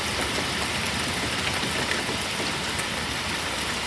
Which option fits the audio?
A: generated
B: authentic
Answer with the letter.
B